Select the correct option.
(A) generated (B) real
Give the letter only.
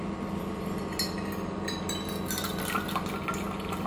B